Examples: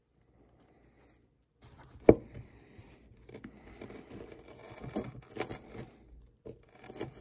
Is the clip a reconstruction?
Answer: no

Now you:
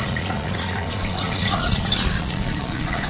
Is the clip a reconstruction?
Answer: yes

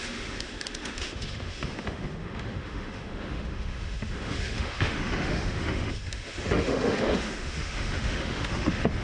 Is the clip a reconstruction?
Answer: yes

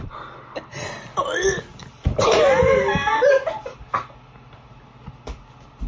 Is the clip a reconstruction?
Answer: no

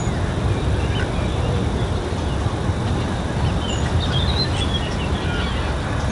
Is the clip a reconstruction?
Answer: no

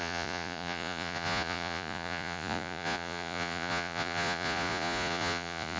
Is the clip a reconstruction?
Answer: yes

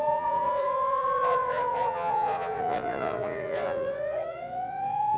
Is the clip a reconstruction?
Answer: yes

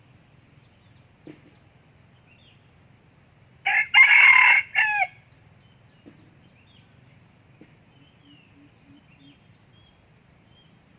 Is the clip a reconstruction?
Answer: no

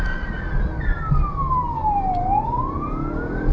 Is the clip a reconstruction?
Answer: no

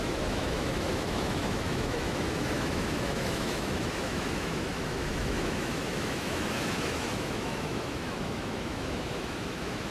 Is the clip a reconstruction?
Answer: yes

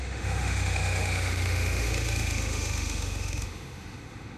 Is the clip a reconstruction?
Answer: yes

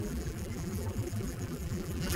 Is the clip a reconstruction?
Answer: yes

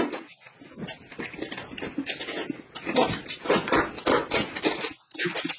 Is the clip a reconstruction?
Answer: no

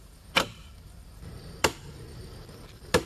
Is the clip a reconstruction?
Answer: no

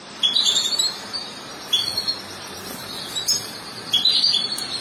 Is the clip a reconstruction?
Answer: yes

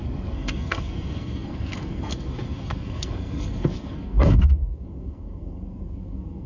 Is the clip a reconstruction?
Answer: yes